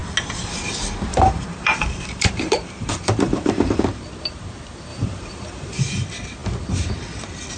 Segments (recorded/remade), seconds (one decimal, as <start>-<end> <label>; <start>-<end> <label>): 0.0-1.1 recorded; 1.1-3.8 remade; 3.8-4.9 recorded; 4.9-5.8 remade; 5.8-7.6 recorded